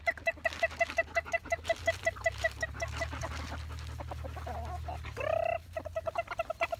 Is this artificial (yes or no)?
no